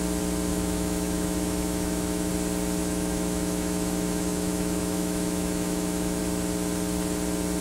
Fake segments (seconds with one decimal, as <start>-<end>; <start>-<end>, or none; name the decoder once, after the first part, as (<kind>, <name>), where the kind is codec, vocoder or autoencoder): 0.5-2.3 (autoencoder, DAC-VAE); 2.8-6.2